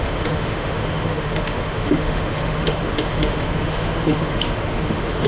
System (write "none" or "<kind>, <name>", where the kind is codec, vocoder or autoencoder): autoencoder, DAC-VAE